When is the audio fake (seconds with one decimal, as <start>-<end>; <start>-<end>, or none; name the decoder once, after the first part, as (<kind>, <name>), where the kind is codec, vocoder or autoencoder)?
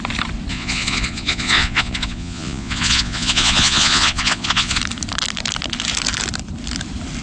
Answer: 0.5-4.8 (vocoder, Vocos)